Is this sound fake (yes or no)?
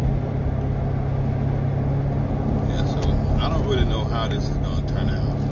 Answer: no